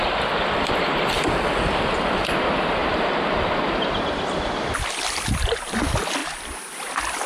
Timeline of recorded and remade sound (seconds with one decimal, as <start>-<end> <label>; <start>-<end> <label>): 0.0-2.8 recorded; 2.8-4.7 remade; 4.7-7.3 recorded